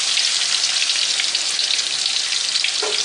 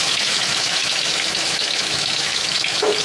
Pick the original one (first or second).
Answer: first